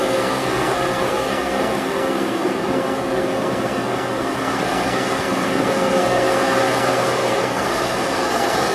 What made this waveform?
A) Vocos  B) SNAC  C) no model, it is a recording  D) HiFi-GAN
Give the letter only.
B